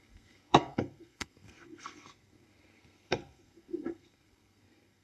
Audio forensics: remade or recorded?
remade